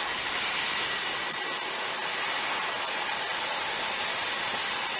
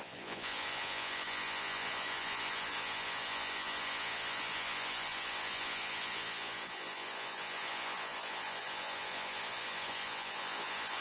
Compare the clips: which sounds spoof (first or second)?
second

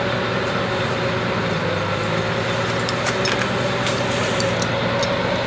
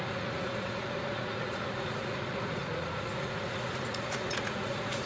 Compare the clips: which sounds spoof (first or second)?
second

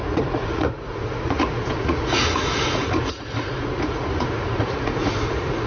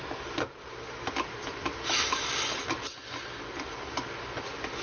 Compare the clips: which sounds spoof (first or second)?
first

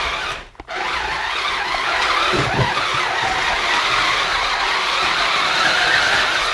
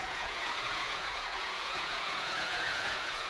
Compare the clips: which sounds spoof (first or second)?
second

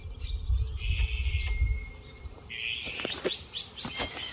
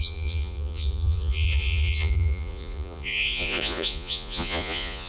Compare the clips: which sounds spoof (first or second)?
second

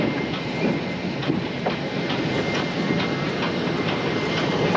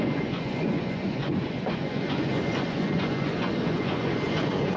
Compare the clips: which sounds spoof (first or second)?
second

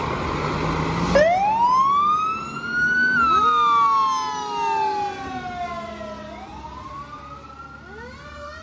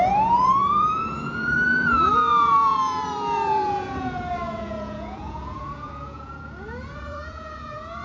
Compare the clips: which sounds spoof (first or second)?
second